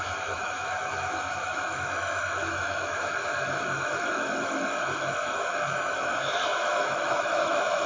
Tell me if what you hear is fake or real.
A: fake